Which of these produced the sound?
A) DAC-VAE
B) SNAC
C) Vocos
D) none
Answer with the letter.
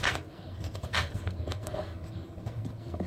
B